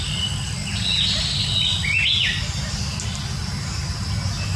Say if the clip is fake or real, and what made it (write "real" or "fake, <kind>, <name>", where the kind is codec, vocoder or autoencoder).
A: real